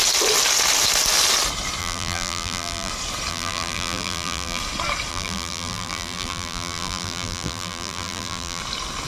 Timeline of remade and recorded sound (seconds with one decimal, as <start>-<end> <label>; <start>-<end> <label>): 0.0-1.8 recorded; 1.8-2.9 remade; 2.9-3.3 recorded; 3.3-4.6 remade; 4.6-5.1 recorded; 5.1-8.6 remade; 8.6-9.1 recorded